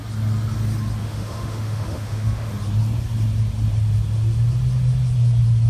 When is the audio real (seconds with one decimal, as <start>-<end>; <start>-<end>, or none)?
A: 0.0-1.0; 2.5-5.7